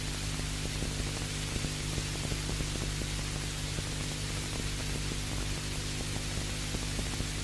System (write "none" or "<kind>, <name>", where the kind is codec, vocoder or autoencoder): none